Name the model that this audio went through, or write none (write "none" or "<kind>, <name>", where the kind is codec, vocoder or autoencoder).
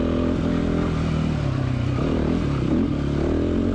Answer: none